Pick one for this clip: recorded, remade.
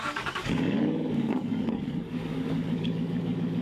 remade